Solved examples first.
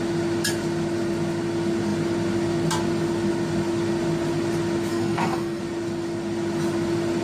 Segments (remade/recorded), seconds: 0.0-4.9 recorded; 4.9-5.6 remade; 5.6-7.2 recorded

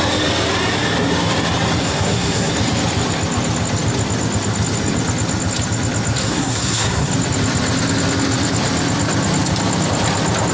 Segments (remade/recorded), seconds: 0.0-1.8 recorded; 1.8-2.5 remade; 2.5-6.2 recorded; 6.2-7.1 remade; 7.1-10.5 recorded

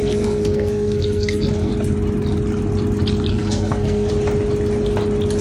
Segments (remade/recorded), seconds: 0.0-1.7 remade; 1.7-3.3 recorded; 3.3-4.1 remade; 4.1-5.4 recorded

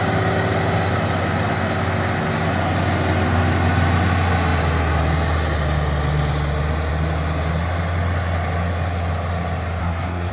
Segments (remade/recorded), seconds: 0.0-9.8 recorded; 9.8-10.3 remade

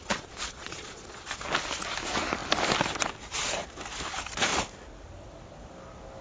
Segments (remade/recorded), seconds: 0.0-1.4 remade; 1.4-6.2 recorded

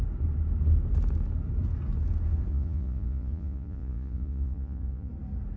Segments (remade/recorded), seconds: 0.0-2.5 recorded; 2.5-5.1 remade; 5.1-5.6 recorded

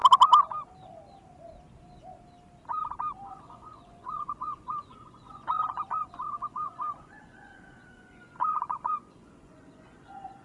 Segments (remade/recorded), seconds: 0.0-3.3 recorded; 3.3-10.4 remade

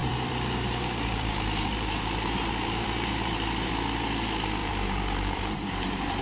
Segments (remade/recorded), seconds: 0.0-3.7 remade; 3.7-4.6 recorded; 4.6-6.2 remade